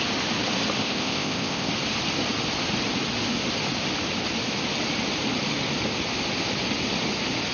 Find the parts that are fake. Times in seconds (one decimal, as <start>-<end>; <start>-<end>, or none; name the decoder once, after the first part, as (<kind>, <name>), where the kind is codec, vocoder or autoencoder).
0.8-1.7 (codec, ZipCodec)